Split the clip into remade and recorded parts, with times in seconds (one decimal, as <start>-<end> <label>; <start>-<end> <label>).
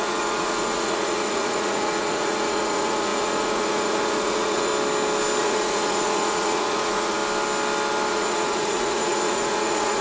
0.0-4.7 remade; 4.7-5.4 recorded; 5.4-7.2 remade; 7.2-8.1 recorded; 8.1-10.0 remade